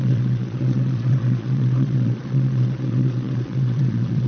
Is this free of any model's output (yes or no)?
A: no